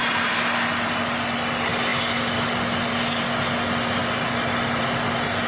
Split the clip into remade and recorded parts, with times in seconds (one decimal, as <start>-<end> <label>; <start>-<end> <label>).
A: 0.0-5.5 recorded